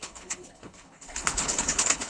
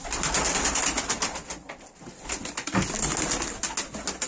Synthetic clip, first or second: first